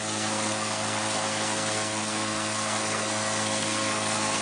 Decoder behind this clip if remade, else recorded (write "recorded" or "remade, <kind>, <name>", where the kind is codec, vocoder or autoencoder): remade, codec, SNAC